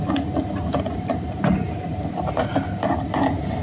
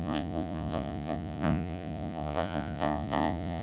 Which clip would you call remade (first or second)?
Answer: second